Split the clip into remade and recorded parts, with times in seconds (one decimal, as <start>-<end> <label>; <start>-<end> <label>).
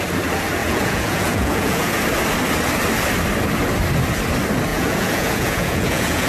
0.0-0.6 recorded; 0.6-1.9 remade; 1.9-4.7 recorded; 4.7-6.3 remade